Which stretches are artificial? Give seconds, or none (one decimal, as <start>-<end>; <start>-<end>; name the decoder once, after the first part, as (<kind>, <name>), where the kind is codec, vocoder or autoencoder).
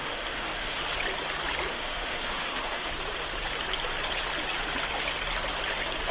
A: 0.0-0.8 (autoencoder, DAC-VAE); 1.7-2.9